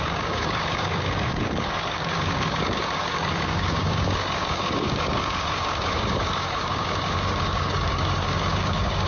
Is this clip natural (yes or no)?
no